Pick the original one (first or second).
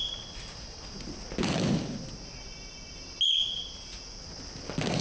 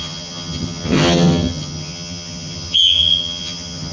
first